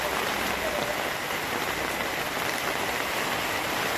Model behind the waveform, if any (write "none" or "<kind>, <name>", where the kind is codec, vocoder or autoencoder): none